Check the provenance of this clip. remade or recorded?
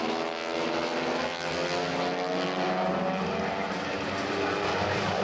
recorded